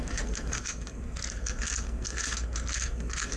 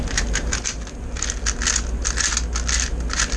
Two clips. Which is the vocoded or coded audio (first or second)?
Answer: first